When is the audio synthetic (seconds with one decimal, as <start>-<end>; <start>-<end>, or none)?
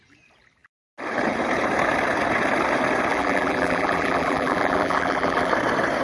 3.1-5.5